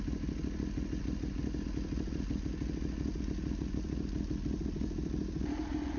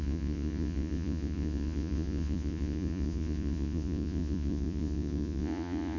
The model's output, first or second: second